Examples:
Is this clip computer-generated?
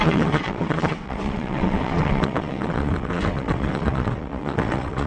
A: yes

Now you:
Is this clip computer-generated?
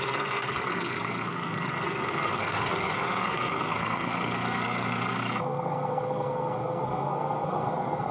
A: yes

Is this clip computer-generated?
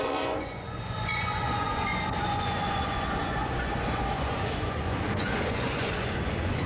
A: yes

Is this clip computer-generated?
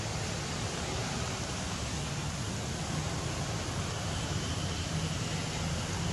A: no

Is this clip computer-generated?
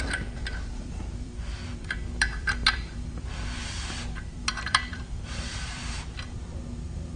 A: yes